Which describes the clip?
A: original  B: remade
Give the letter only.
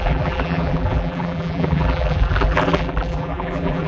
B